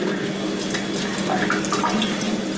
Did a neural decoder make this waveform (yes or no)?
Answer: no